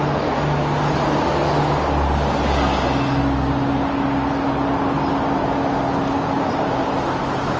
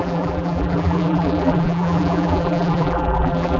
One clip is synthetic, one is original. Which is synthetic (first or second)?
second